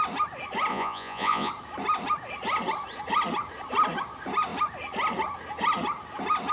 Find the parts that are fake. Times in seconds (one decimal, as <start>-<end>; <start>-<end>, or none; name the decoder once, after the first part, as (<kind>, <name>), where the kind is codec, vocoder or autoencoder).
0.7-1.5 (vocoder, Vocos)